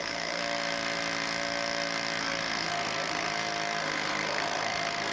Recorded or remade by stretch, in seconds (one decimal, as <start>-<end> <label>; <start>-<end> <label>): 0.0-0.4 remade; 0.4-2.2 recorded; 2.2-3.3 remade; 3.3-3.8 recorded; 3.8-5.1 remade